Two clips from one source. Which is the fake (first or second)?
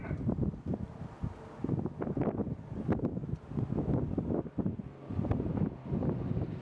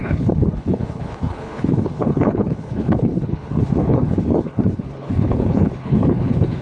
second